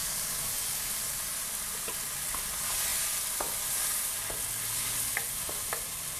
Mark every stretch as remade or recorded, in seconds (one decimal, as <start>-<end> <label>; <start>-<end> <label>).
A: 0.0-0.9 remade; 0.9-6.2 recorded